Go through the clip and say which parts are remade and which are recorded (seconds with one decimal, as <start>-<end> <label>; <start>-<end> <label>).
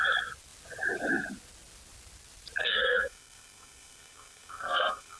0.0-2.6 recorded; 2.6-5.2 remade